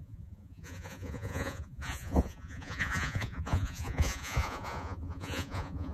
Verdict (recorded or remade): remade